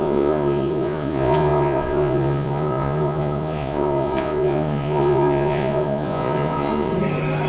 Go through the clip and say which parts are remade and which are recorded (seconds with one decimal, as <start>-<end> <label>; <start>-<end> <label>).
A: 0.0-6.9 remade; 6.9-7.5 recorded